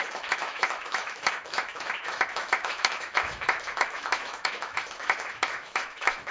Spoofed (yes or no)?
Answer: yes